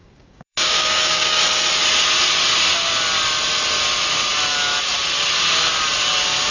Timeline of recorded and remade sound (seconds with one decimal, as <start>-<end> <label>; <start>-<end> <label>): 0.0-1.4 remade; 1.4-6.5 recorded

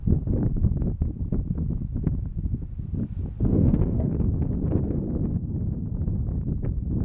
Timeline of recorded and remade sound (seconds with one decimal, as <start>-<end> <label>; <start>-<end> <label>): 0.0-3.5 recorded; 3.5-4.3 remade; 4.3-7.0 recorded